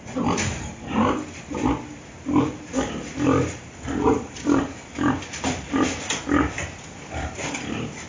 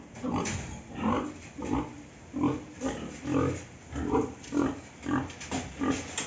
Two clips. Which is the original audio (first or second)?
second